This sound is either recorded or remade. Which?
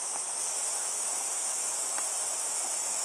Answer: remade